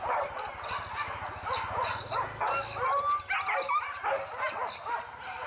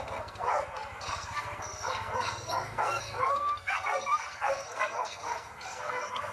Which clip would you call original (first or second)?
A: first